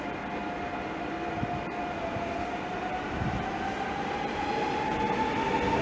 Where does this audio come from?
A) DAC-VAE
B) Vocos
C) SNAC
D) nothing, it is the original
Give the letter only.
D